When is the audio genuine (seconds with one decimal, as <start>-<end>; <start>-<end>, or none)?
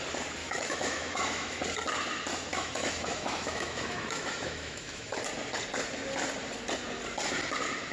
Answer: 0.0-0.4; 1.6-2.5; 5.2-7.9